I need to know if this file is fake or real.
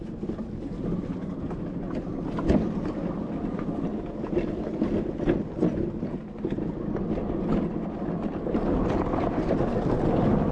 real